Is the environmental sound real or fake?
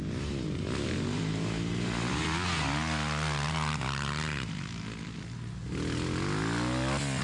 real